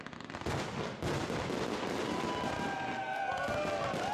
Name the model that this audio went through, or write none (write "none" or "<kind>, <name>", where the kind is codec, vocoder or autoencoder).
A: none